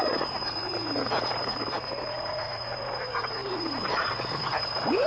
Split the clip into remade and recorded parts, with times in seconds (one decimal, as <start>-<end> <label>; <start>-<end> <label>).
0.0-5.1 remade